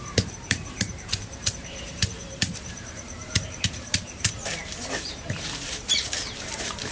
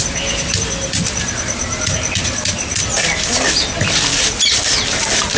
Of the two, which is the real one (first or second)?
second